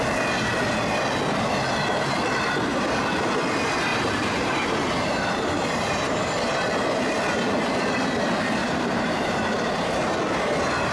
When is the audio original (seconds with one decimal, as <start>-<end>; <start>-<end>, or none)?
0.0-3.9; 6.3-8.6; 9.9-10.9